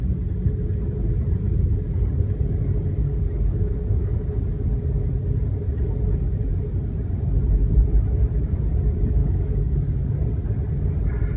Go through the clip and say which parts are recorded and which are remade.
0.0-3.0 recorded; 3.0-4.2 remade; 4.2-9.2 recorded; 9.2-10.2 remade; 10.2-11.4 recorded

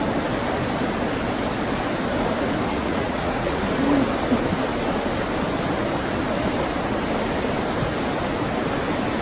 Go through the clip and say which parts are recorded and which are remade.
0.0-2.7 recorded; 2.7-3.6 remade; 3.6-9.2 recorded

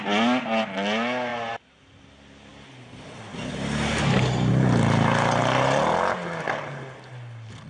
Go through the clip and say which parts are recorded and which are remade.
0.0-7.7 recorded

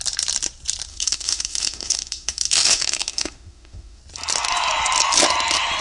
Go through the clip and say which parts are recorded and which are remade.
0.0-0.9 recorded; 0.9-4.0 remade; 4.0-5.8 recorded

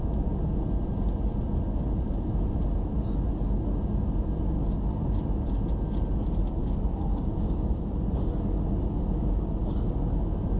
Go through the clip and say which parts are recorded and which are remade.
0.0-10.6 recorded

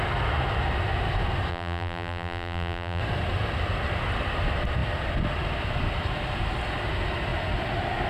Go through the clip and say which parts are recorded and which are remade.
0.0-1.5 recorded; 1.5-3.0 remade; 3.0-8.1 recorded

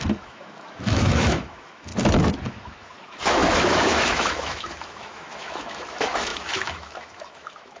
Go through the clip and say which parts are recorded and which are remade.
0.0-1.9 remade; 1.9-2.4 recorded; 2.4-7.8 remade

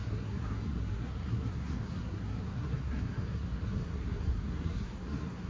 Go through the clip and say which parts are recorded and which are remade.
0.0-5.5 remade